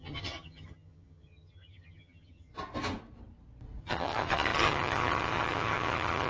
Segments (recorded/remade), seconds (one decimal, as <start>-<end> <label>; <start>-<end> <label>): 0.0-2.5 remade; 2.5-3.8 recorded; 3.8-6.3 remade